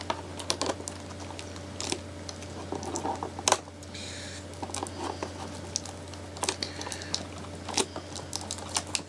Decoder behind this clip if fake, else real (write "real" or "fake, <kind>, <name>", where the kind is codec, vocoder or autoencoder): real